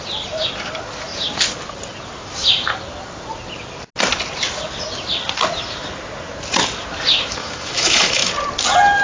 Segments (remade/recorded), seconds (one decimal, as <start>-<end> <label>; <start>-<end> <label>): 0.0-7.4 recorded; 7.4-8.3 remade; 8.3-9.0 recorded